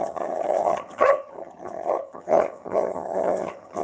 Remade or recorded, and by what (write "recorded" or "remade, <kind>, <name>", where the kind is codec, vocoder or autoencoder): remade, vocoder, HiFi-GAN